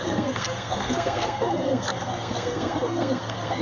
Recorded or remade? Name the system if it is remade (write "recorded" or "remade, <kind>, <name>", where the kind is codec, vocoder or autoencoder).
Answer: remade, codec, SNAC